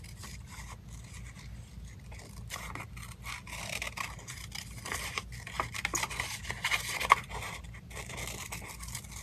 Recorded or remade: recorded